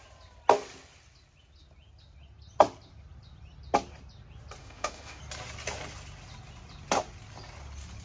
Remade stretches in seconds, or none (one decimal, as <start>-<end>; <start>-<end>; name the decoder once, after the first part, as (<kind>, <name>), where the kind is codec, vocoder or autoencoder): 4.6-5.2 (autoencoder, DAC-VAE)